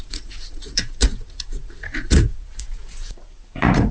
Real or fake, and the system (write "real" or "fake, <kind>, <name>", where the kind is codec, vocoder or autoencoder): fake, vocoder, Vocos